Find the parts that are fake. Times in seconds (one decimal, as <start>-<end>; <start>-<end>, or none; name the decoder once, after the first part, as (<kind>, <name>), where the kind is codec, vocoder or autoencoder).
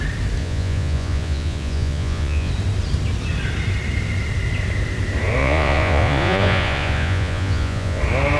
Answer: 0.4-2.5 (vocoder, Vocos); 5.4-8.0